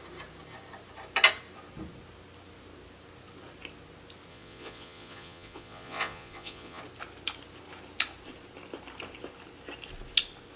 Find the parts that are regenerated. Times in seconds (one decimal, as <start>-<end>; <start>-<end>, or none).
4.3-6.8

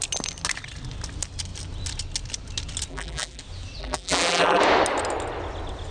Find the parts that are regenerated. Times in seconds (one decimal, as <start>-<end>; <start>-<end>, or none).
2.9-3.4; 3.8-4.6

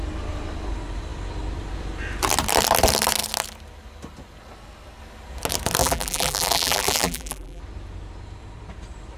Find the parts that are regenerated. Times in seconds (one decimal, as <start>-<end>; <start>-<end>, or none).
5.8-7.6

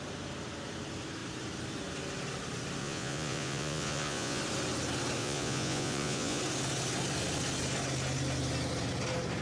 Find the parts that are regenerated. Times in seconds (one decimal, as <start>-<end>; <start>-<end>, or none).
2.8-4.4; 5.2-6.4

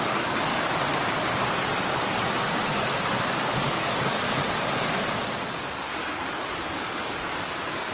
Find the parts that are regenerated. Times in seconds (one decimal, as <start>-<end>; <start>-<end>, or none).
0.0-0.5; 3.2-4.4; 5.5-7.9

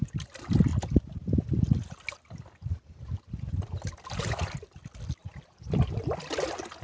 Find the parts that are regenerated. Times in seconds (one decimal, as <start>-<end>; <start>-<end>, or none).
none

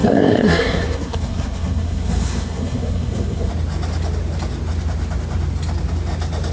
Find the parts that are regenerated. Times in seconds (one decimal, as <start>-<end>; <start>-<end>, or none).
0.0-3.5

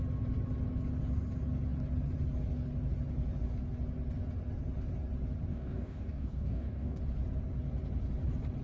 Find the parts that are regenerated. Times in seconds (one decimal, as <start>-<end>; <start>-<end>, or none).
5.5-7.0